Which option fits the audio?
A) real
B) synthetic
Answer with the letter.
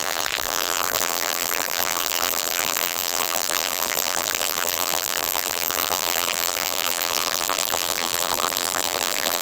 B